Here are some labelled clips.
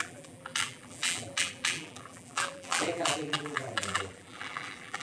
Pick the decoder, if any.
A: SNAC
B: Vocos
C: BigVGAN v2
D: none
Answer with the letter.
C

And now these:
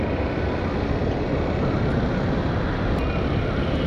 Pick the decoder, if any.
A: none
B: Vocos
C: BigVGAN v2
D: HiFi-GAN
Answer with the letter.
A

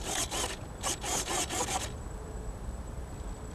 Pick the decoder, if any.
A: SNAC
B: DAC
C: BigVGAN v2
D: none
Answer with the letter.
C